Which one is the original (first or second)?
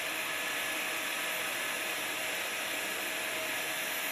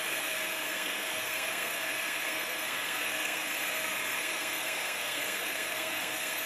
first